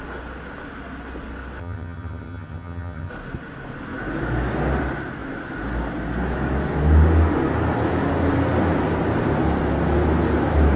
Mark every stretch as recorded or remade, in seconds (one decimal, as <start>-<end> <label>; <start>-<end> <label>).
0.0-1.6 recorded; 1.6-3.1 remade; 3.1-10.8 recorded